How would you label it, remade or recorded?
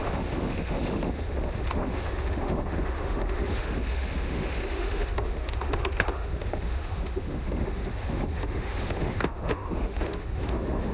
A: remade